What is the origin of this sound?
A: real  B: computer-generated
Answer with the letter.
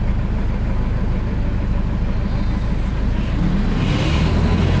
A